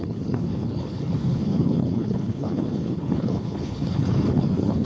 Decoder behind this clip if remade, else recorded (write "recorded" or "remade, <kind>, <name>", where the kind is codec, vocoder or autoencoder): remade, codec, HILCodec